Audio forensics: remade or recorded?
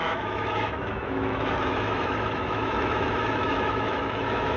remade